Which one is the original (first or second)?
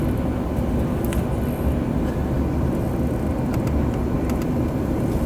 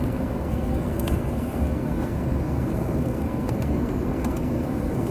first